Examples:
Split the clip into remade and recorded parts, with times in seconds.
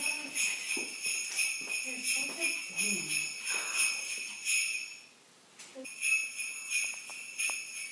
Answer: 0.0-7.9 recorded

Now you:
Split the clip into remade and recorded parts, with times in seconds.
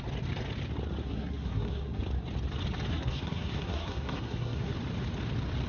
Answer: 0.0-1.0 recorded; 1.0-2.0 remade; 2.0-2.9 recorded; 2.9-4.7 remade; 4.7-5.7 recorded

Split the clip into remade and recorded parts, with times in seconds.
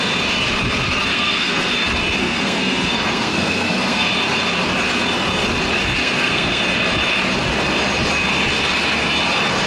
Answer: 0.0-1.1 recorded; 1.1-1.7 remade; 1.7-2.2 recorded; 2.2-4.1 remade; 4.1-6.0 recorded; 6.0-6.6 remade; 6.6-9.7 recorded